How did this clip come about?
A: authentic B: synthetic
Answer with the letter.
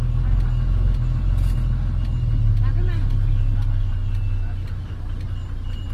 A